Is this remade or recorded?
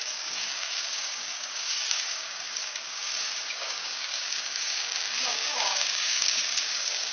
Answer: remade